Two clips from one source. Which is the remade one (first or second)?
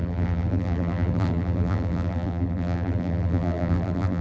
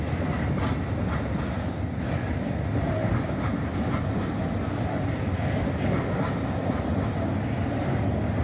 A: first